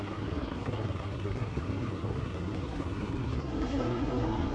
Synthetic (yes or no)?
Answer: yes